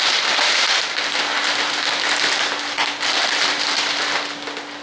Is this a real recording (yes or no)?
yes